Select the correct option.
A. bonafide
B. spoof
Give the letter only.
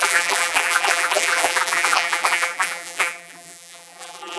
B